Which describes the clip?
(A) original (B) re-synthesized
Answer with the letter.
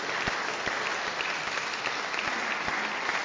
A